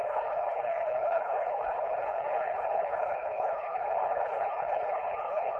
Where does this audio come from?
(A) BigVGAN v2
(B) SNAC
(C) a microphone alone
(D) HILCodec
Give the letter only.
D